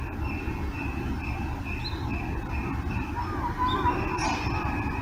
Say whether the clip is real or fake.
real